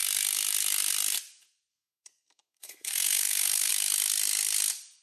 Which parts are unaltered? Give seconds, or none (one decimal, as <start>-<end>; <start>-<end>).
0.0-1.7; 3.7-5.0